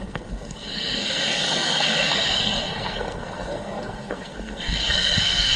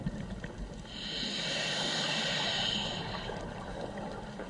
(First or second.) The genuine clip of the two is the second